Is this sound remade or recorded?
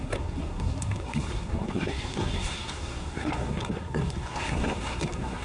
remade